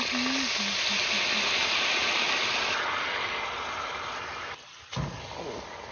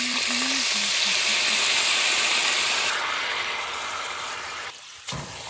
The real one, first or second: first